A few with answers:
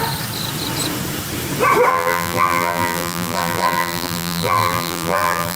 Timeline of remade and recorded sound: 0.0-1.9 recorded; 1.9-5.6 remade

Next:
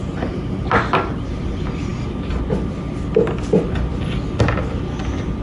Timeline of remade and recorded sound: 0.0-0.6 remade; 0.6-5.4 recorded

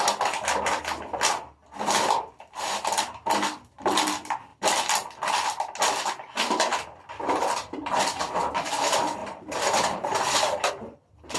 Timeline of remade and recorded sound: 0.0-9.2 recorded; 9.2-10.7 remade; 10.7-11.4 recorded

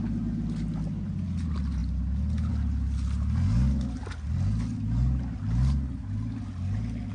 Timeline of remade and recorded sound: 0.0-7.1 recorded

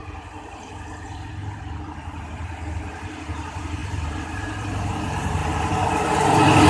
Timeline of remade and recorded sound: 0.0-5.4 remade; 5.4-6.7 recorded

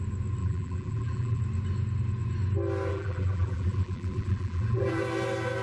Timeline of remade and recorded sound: 0.0-0.4 recorded; 0.4-1.4 remade; 1.4-2.9 recorded; 2.9-5.0 remade; 5.0-5.6 recorded

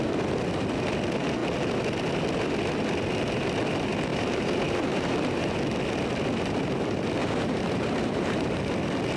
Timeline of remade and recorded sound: 0.0-4.1 recorded; 4.1-5.5 remade; 5.5-7.2 recorded; 7.2-8.6 remade; 8.6-9.2 recorded